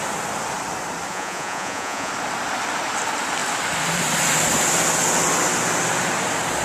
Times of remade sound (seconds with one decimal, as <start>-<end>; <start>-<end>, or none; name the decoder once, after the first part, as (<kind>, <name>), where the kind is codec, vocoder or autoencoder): 1.1-2.1 (vocoder, Vocos)

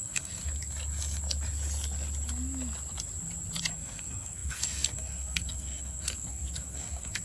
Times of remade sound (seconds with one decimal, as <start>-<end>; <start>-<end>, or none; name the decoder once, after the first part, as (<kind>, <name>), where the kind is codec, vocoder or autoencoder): 0.0-0.4 (codec, SNAC); 3.7-7.2

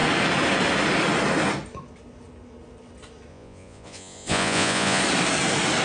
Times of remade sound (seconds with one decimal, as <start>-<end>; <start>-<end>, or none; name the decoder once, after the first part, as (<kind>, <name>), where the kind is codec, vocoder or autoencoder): 3.3-5.0 (vocoder, Vocos)